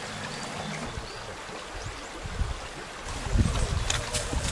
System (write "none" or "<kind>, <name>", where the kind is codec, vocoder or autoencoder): none